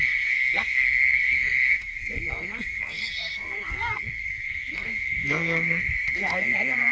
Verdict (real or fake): fake